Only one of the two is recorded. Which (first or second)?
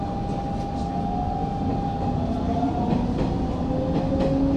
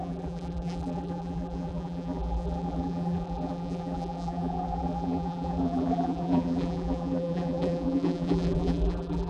first